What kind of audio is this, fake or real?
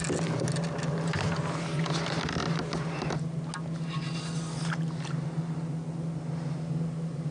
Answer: real